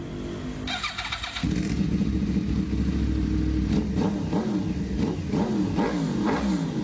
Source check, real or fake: real